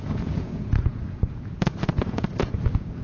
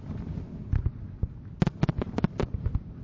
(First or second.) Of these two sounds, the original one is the second